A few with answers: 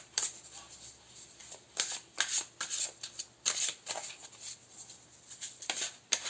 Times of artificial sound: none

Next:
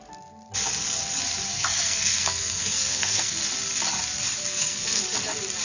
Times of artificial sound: 1.5-3.4 (codec, SNAC); 4.4-5.0

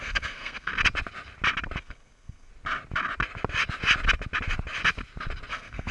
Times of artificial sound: 0.0-0.7 (codec, SNAC); 1.8-2.5; 5.5-5.9

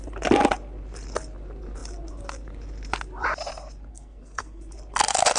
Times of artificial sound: 3.9-4.6 (codec, SNAC)